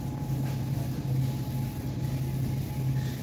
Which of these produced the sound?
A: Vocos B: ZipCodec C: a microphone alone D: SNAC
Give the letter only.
C